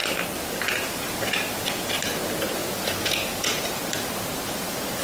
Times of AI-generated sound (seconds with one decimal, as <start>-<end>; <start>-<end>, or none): 2.6-3.8